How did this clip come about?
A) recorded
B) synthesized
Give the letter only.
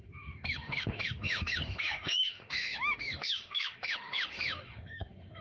B